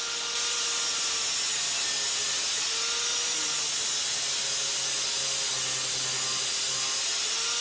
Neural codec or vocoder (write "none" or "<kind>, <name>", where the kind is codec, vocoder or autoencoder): none